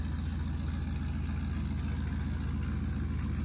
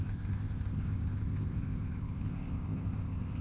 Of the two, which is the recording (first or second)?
first